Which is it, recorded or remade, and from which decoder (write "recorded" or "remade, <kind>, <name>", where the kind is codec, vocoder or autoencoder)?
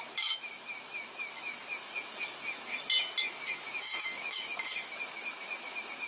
remade, autoencoder, DAC-VAE